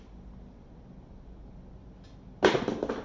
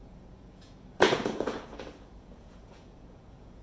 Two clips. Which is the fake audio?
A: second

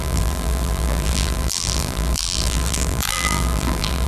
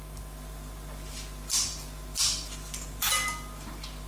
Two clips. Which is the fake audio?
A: first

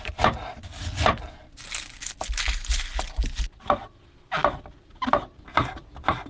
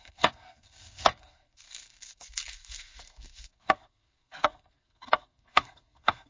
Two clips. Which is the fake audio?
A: second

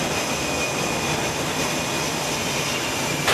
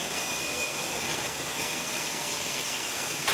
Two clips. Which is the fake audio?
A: second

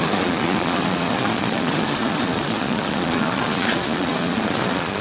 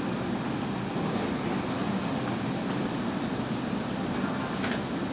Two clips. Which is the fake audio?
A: first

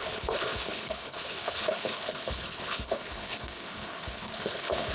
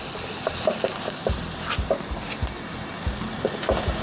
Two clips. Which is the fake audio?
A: first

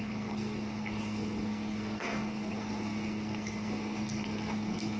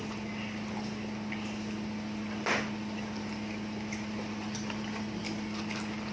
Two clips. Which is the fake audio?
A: first